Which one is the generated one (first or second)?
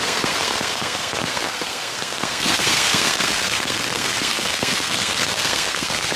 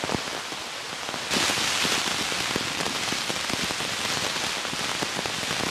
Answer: first